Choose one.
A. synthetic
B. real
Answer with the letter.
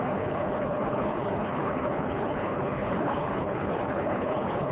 A